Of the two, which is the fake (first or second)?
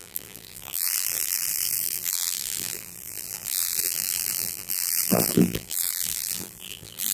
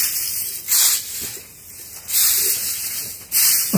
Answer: first